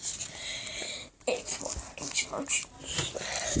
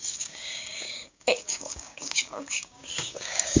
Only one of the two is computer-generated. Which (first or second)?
second